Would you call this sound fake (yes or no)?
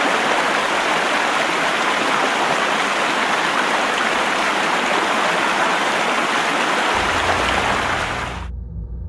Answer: no